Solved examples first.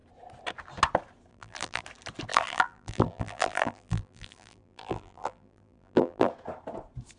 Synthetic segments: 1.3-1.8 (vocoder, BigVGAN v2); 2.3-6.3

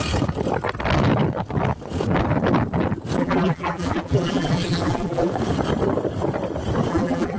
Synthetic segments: 3.2-5.3 (vocoder, BigVGAN v2); 6.9-7.4

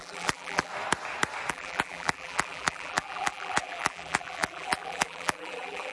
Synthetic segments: 0.0-0.7 (vocoder, BigVGAN v2); 1.5-5.9

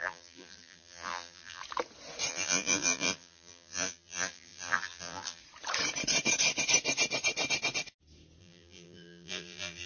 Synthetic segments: 0.0-1.6 (vocoder, BigVGAN v2); 2.3-5.4; 8.4-9.9

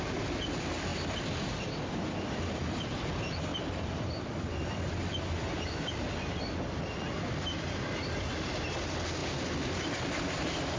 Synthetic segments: 0.9-3.1 (vocoder, BigVGAN v2); 3.5-6.4

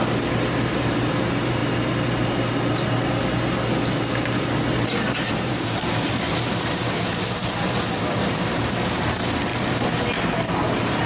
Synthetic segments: 0.0-1.6 (vocoder, BigVGAN v2); 5.3-9.5; 10.7-11.1